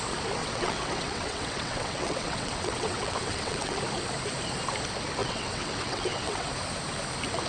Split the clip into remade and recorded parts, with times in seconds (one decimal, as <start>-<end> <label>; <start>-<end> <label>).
0.0-0.4 recorded; 0.4-3.8 remade; 3.8-5.2 recorded; 5.2-6.5 remade; 6.5-7.5 recorded